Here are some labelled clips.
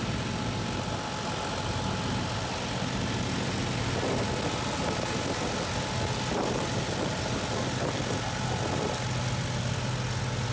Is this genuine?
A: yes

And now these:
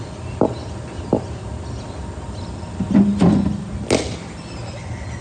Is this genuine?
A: yes